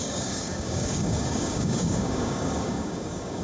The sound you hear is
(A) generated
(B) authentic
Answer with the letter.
A